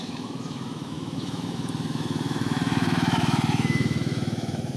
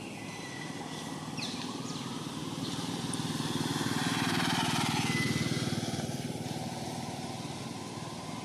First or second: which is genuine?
second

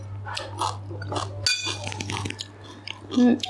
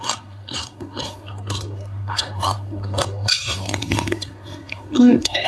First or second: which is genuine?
first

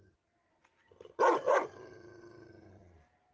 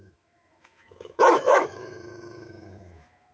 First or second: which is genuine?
first